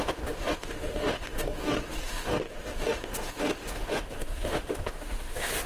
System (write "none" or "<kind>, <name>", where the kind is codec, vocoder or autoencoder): autoencoder, DAC-VAE